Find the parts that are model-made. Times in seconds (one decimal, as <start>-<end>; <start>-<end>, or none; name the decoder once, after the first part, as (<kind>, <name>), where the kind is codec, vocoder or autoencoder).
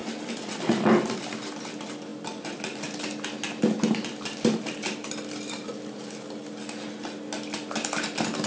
none